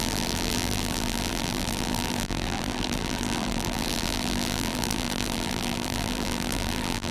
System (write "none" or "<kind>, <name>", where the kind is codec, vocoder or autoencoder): vocoder, BigVGAN v2